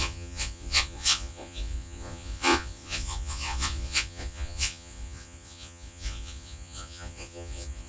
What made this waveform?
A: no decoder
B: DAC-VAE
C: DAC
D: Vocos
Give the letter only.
D